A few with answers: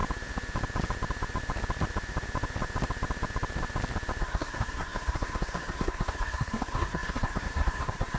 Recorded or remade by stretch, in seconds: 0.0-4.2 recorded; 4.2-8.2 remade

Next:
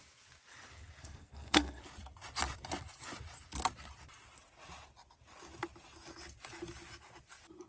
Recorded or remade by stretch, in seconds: 0.0-1.0 recorded; 1.0-1.8 remade; 1.8-7.7 recorded

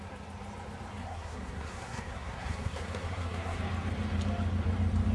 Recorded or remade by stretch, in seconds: 0.0-1.0 recorded; 1.0-3.6 remade; 3.6-5.1 recorded

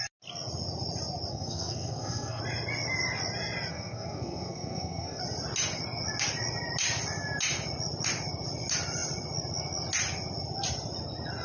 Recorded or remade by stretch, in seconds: 0.0-1.3 recorded; 1.3-2.4 remade; 2.4-3.7 recorded; 3.7-5.2 remade; 5.2-11.4 recorded

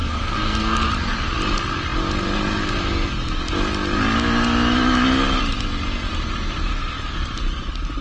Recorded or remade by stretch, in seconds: 0.0-0.9 remade; 0.9-8.0 recorded

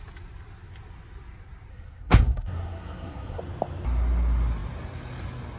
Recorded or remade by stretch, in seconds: 0.0-1.7 recorded; 1.7-3.4 remade; 3.4-5.6 recorded

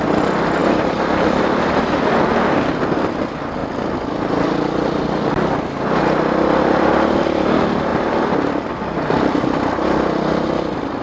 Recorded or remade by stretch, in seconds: 0.0-11.0 recorded

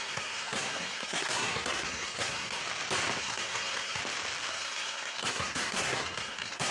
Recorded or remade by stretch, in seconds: 0.0-2.6 remade; 2.6-3.2 recorded; 3.2-4.0 remade; 4.0-4.5 recorded; 4.5-6.7 remade